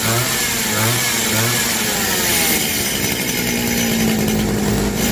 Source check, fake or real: real